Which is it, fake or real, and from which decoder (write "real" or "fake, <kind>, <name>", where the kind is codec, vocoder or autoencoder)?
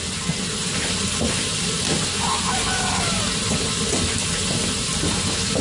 real